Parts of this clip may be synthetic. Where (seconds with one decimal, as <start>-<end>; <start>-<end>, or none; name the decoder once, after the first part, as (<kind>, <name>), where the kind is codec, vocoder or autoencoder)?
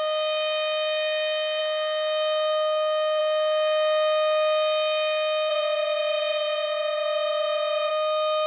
5.5-7.9 (vocoder, WaveNeXt)